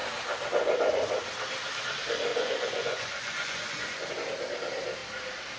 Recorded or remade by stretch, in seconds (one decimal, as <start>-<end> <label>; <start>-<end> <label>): 0.0-2.3 recorded; 2.3-4.1 remade; 4.1-5.6 recorded